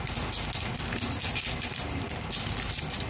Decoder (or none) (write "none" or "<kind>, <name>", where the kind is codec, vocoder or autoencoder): none